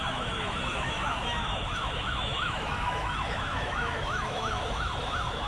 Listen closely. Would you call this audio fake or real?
fake